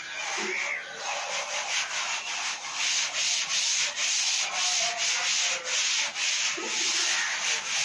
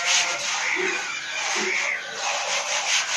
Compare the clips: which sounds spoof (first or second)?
second